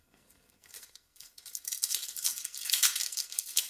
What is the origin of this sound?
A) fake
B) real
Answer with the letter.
A